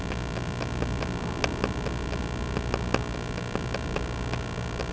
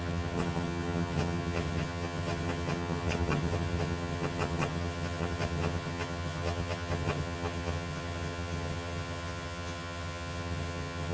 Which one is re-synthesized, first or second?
second